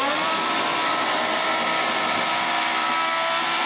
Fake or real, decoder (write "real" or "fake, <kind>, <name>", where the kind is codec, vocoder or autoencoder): fake, vocoder, BigVGAN v2